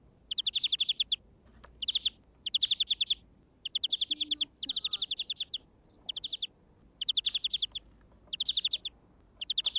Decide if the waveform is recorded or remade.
recorded